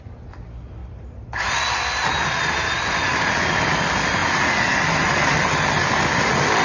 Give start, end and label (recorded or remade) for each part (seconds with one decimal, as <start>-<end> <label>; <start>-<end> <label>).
0.0-6.6 recorded